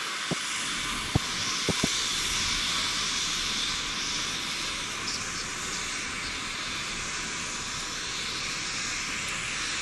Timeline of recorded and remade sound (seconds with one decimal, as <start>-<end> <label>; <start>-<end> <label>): 0.0-9.8 recorded